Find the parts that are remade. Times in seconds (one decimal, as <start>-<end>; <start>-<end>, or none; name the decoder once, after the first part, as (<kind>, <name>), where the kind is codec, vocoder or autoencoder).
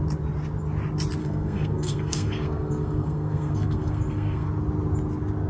1.2-4.5 (codec, SNAC)